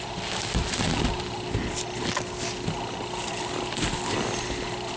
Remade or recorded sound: recorded